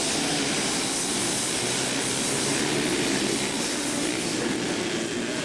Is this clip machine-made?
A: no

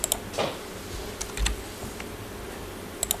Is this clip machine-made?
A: no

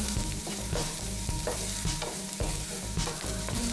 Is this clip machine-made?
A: yes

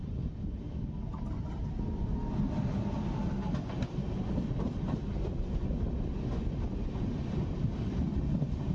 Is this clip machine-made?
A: no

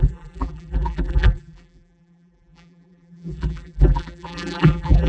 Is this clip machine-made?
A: yes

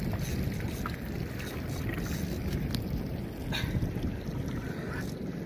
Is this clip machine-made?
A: no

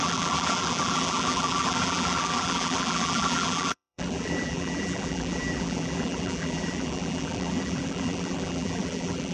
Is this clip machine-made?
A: yes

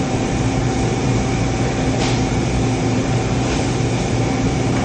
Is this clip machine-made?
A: yes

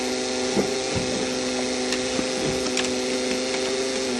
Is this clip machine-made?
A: no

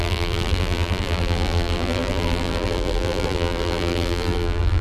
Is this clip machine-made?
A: yes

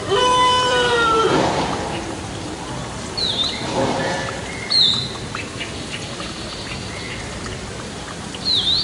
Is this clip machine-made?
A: yes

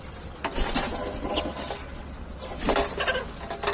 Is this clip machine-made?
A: no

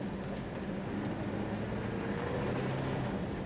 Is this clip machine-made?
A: no